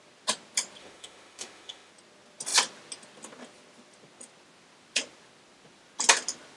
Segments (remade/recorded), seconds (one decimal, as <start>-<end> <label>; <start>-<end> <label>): 0.0-0.8 recorded; 0.8-1.9 remade; 1.9-6.6 recorded